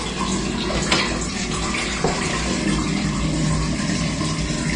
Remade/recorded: recorded